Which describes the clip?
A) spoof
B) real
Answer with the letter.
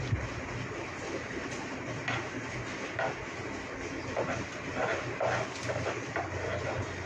B